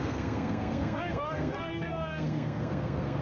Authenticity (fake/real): fake